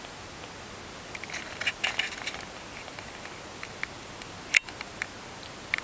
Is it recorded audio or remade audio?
recorded